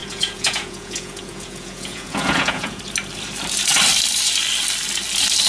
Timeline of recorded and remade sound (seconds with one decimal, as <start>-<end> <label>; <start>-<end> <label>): 0.0-2.8 remade; 2.8-5.5 recorded